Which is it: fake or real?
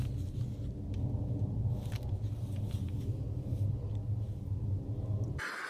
real